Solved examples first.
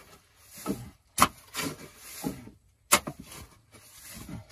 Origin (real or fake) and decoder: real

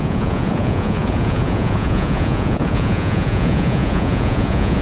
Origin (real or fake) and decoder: fake, vocoder, Vocos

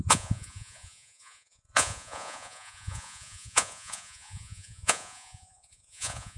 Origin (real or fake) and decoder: fake, vocoder, Vocos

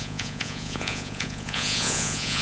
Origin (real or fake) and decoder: fake, vocoder, Vocos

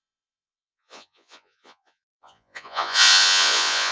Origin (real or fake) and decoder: fake, vocoder, Vocos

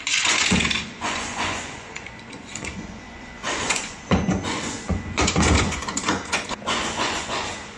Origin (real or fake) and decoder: fake, vocoder, Vocos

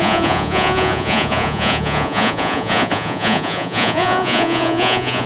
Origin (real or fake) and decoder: fake, vocoder, Vocos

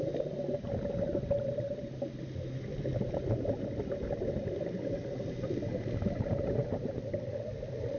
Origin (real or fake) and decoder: real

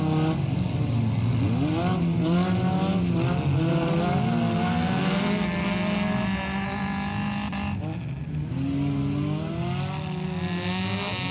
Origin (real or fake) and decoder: real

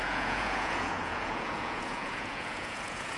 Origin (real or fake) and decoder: fake, vocoder, Vocos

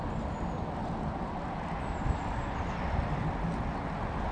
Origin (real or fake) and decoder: real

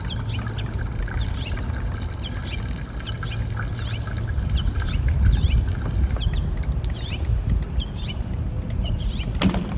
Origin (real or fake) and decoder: real